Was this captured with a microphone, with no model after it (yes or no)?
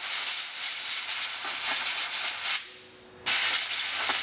yes